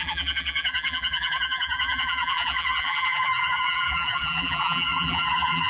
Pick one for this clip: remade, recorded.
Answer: remade